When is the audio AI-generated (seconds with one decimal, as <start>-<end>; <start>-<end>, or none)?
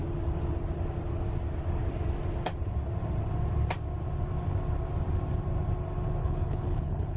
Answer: 6.2-7.2